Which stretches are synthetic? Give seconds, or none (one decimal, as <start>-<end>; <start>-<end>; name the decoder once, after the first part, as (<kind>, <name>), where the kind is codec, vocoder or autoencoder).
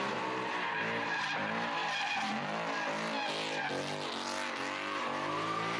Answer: none